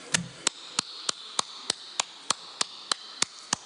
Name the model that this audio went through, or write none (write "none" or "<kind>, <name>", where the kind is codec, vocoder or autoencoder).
none